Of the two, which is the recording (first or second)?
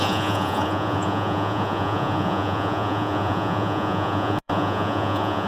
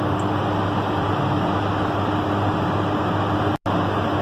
second